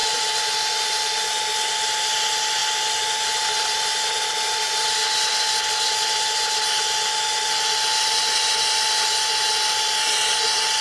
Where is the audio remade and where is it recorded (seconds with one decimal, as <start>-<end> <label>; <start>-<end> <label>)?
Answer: 0.0-10.8 recorded

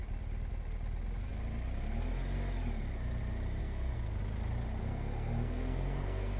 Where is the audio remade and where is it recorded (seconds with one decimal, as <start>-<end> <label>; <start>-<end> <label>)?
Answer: 0.0-3.6 recorded; 3.6-4.2 remade; 4.2-4.8 recorded; 4.8-6.4 remade